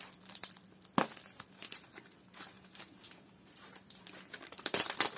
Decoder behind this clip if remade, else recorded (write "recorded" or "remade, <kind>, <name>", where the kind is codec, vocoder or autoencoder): remade, vocoder, BigVGAN v2